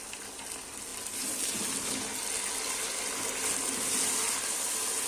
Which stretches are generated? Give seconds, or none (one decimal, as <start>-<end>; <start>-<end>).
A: none

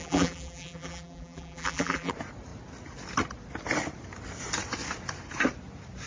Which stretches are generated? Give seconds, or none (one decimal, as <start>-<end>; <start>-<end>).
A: 0.0-2.1